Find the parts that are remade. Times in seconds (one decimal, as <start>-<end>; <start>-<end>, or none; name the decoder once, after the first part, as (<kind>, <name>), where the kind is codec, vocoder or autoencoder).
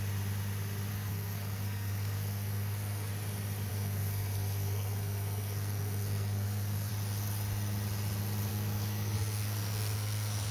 0.9-3.1 (codec, SNAC); 3.7-6.9; 8.5-10.5